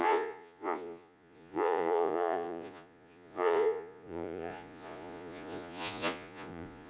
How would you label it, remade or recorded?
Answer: remade